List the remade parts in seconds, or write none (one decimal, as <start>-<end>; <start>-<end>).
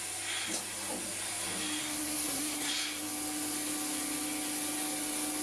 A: 1.8-2.7